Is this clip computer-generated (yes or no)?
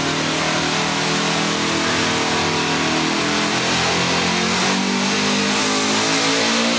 no